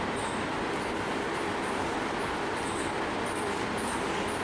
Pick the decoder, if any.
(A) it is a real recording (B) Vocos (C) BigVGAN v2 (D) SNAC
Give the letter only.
A